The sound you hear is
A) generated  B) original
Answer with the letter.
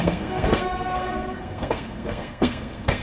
A